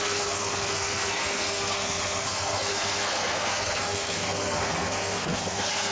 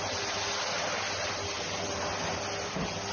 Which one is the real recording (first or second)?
second